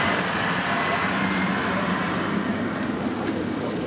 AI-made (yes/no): yes